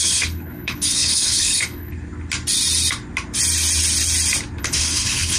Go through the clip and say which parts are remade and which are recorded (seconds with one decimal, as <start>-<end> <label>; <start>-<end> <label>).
0.0-1.9 remade; 1.9-4.6 recorded; 4.6-5.4 remade